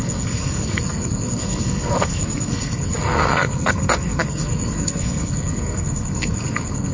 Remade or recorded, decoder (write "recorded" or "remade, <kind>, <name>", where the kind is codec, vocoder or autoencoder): remade, codec, SNAC